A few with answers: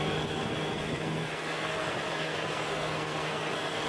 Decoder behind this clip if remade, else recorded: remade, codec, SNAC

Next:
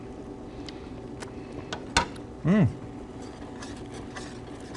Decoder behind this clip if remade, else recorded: recorded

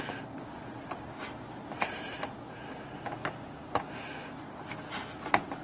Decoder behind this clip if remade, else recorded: recorded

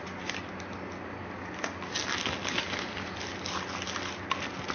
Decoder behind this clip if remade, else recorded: recorded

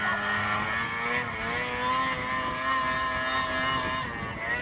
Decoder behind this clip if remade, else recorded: recorded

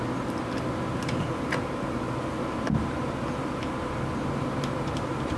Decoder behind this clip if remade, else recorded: recorded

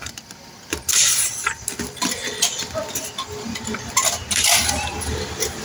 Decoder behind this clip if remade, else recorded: recorded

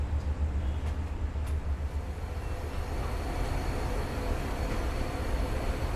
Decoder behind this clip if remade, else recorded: recorded